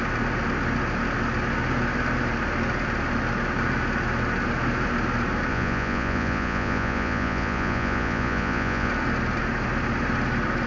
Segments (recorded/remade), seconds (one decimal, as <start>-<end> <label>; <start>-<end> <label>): 0.0-5.5 recorded; 5.5-8.9 remade; 8.9-10.7 recorded